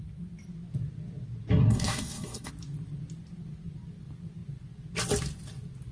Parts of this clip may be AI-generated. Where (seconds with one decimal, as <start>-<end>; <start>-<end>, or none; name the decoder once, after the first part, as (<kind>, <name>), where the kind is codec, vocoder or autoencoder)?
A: 1.6-2.5 (codec, SNAC)